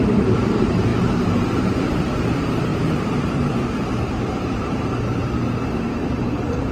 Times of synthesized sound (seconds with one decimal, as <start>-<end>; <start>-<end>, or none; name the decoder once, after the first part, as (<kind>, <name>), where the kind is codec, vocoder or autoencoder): 0.0-0.9 (vocoder, BigVGAN v2); 1.6-5.2; 5.7-6.7